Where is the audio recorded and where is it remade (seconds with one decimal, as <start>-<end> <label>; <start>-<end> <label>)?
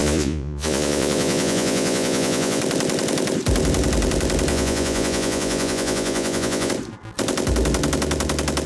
0.0-2.6 remade; 2.6-4.5 recorded; 4.5-6.7 remade; 6.7-8.7 recorded